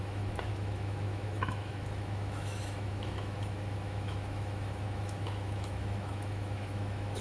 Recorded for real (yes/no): no